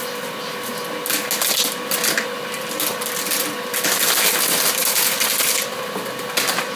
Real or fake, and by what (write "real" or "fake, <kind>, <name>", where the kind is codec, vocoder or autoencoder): real